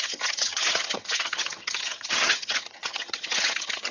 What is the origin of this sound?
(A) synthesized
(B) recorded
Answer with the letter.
A